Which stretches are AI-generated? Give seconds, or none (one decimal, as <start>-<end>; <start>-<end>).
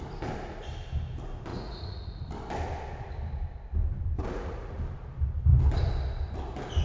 1.5-2.2; 4.3-4.8